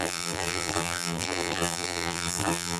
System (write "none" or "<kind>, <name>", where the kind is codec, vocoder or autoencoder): vocoder, BigVGAN v2